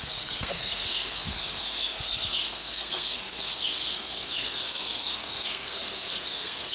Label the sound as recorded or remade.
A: remade